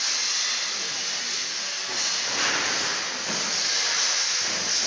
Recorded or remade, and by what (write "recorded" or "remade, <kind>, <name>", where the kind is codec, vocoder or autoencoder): recorded